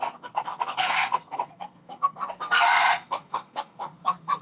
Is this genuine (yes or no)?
no